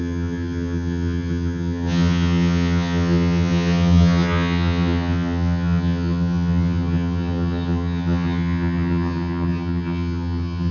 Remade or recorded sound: remade